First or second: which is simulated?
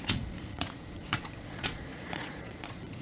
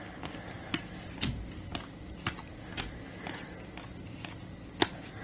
first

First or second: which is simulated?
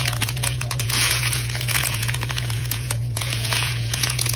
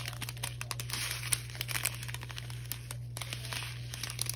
first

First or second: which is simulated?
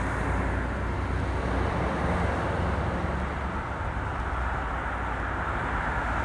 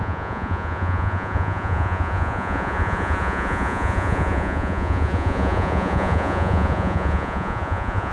second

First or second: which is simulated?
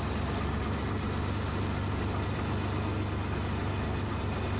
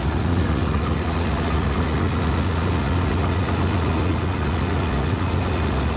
second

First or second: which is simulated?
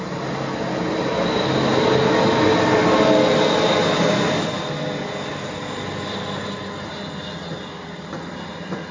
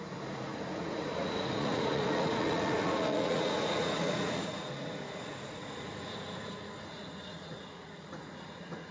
second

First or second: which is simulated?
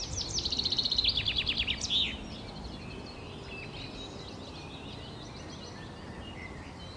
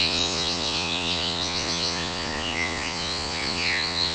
second